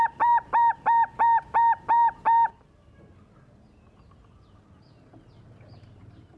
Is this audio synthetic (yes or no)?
no